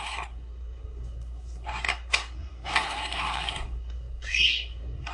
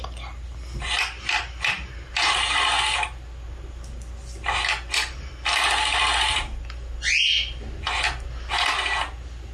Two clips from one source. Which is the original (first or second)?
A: second